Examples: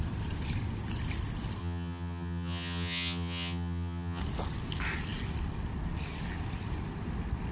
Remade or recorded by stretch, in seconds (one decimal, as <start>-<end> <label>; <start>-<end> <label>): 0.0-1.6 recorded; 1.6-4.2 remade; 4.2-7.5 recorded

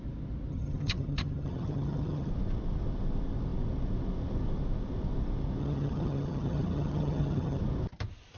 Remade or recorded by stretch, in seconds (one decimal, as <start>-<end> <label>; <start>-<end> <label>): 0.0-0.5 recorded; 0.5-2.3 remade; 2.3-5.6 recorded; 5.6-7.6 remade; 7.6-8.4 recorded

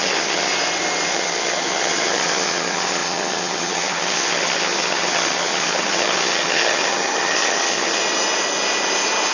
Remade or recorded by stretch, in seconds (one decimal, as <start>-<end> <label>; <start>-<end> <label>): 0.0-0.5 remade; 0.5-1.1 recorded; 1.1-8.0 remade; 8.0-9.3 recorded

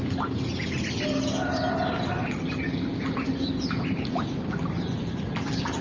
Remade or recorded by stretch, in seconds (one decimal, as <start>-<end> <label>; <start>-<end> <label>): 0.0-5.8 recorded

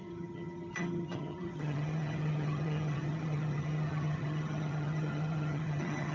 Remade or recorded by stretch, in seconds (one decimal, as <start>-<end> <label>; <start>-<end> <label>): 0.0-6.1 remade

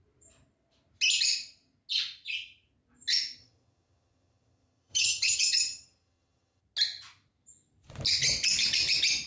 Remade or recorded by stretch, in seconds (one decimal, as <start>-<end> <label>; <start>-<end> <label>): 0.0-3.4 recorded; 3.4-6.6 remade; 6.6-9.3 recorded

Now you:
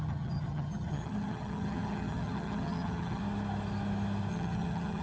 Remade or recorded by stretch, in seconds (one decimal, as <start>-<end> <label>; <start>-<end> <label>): 0.0-3.2 remade; 3.2-4.3 recorded; 4.3-5.0 remade